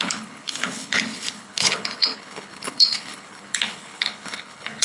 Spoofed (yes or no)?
yes